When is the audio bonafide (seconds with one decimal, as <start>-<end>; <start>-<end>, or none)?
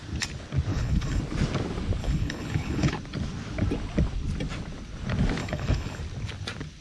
0.0-0.7; 1.2-2.0; 2.9-5.4; 6.0-6.8